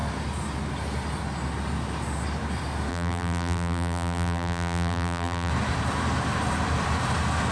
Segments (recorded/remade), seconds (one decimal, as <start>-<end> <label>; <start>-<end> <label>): 0.0-2.9 recorded; 2.9-5.5 remade; 5.5-7.5 recorded